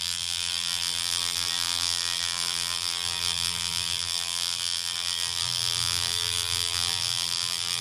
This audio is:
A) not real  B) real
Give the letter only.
A